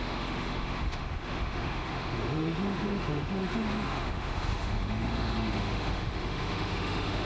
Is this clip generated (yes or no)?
yes